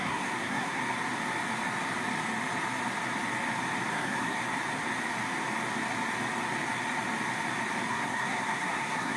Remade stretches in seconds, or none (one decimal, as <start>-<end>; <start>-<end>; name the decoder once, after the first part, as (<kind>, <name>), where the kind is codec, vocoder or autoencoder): 0.0-0.8 (codec, SNAC); 3.9-4.4; 7.9-9.2